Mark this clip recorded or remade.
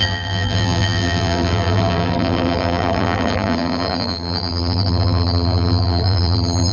remade